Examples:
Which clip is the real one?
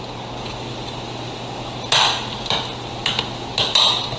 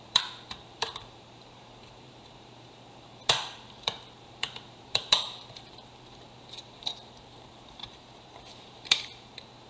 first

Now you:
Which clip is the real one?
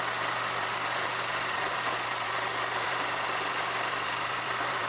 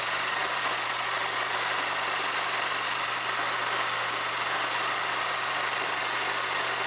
second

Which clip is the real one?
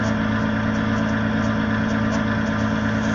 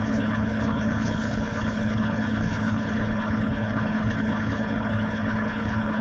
first